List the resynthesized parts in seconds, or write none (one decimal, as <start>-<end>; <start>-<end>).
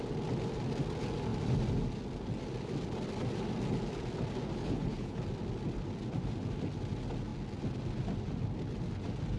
4.6-5.2